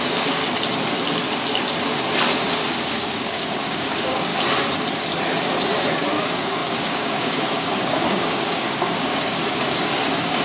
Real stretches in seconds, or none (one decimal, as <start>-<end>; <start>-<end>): 0.4-2.9; 4.3-5.9